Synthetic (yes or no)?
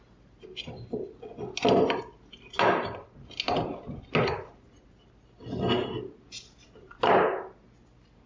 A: no